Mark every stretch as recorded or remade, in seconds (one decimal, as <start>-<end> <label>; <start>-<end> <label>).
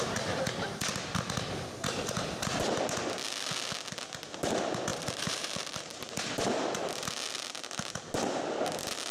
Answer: 0.0-4.9 recorded; 4.9-6.7 remade; 6.7-9.1 recorded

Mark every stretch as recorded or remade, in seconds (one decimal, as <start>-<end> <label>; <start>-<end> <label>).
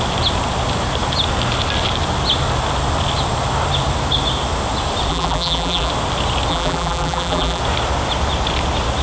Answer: 0.0-5.1 recorded; 5.1-5.9 remade; 5.9-6.5 recorded; 6.5-7.6 remade; 7.6-9.0 recorded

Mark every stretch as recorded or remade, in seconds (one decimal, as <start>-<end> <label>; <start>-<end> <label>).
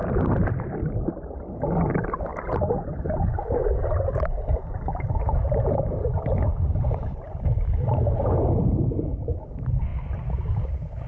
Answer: 0.0-9.9 remade; 9.9-11.1 recorded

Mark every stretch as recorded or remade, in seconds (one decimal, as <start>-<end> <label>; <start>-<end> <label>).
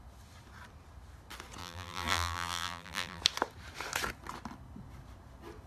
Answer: 0.0-1.6 recorded; 1.6-3.2 remade; 3.2-5.7 recorded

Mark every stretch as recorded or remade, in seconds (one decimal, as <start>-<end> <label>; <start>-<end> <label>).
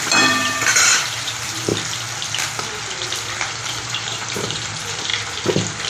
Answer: 0.0-1.7 remade; 1.7-3.4 recorded; 3.4-5.1 remade; 5.1-5.9 recorded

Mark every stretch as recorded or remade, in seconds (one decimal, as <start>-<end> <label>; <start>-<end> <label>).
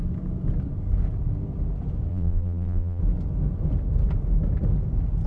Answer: 0.0-2.1 recorded; 2.1-3.0 remade; 3.0-5.3 recorded